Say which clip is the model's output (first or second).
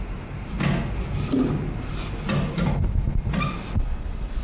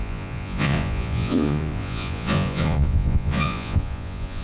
second